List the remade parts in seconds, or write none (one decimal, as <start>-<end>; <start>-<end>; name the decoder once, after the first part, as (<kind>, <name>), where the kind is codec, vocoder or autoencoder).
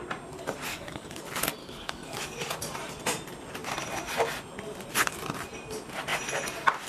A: 0.7-1.2 (codec, DAC); 1.6-2.5